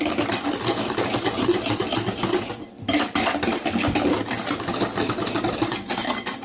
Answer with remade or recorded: recorded